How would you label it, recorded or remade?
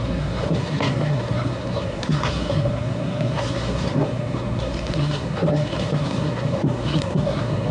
remade